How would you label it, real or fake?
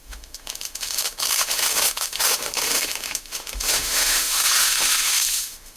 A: fake